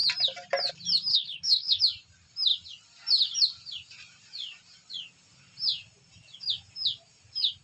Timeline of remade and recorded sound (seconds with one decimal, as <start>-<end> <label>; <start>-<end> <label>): 0.0-1.1 recorded; 1.1-1.8 remade; 1.8-7.6 recorded

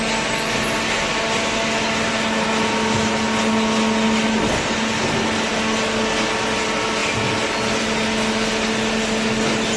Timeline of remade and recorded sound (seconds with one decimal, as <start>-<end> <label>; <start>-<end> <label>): 0.0-9.8 recorded

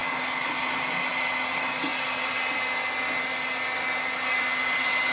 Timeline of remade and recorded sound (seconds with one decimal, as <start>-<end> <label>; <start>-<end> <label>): 0.0-5.1 recorded

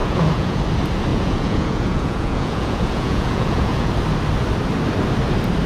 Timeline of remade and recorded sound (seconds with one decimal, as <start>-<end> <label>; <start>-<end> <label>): 0.0-0.6 remade; 0.6-1.1 recorded; 1.1-3.9 remade; 3.9-5.7 recorded

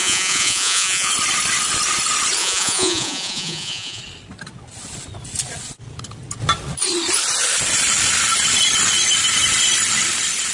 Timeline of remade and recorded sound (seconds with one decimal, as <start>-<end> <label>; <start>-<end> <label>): 0.0-1.1 remade; 1.1-2.4 recorded; 2.4-4.0 remade; 4.0-10.5 recorded

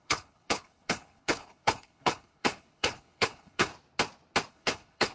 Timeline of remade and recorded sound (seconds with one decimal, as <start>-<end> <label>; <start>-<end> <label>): 0.0-3.7 remade; 3.7-4.5 recorded; 4.5-5.1 remade

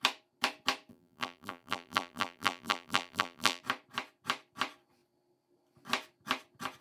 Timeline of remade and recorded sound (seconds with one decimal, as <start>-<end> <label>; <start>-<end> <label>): 0.0-0.9 recorded; 0.9-3.6 remade; 3.6-6.8 recorded

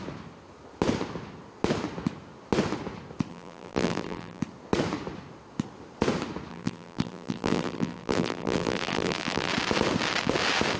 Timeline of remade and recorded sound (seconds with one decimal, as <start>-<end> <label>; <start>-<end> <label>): 0.0-3.3 recorded; 3.3-4.4 remade; 4.4-6.5 recorded; 6.5-9.5 remade; 9.5-10.8 recorded